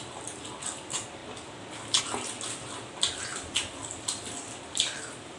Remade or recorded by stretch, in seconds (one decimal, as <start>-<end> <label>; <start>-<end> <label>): 0.0-3.3 recorded; 3.3-5.4 remade